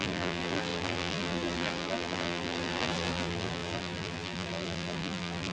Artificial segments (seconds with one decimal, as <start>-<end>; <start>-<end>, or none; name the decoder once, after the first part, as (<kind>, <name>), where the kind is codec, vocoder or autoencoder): 0.0-5.5 (vocoder, BigVGAN v2)